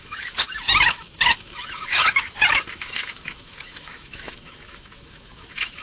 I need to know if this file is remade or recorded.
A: remade